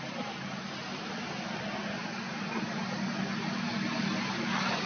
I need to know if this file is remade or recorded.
recorded